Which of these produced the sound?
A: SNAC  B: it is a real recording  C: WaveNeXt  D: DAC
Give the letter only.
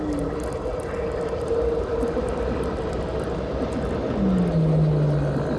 B